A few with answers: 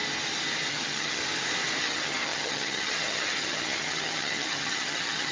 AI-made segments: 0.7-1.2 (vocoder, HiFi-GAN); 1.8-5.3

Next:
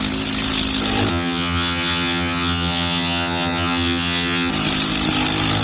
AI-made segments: 1.1-4.5 (vocoder, HiFi-GAN)

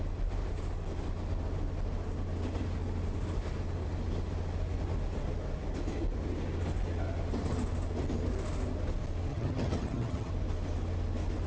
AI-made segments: 9.3-10.3 (vocoder, HiFi-GAN)

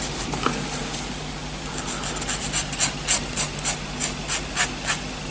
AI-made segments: none

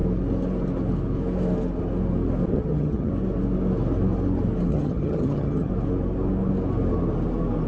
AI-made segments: 2.5-3.1 (vocoder, HiFi-GAN); 4.7-5.7